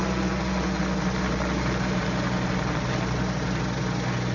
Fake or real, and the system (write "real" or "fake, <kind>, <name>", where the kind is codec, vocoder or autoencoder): real